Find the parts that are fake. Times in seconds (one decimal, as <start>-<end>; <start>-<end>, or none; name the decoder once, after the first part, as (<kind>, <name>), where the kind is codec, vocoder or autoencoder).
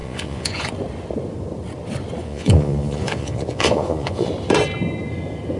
0.0-0.7 (vocoder, Vocos); 2.2-4.3